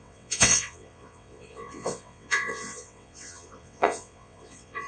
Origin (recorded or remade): remade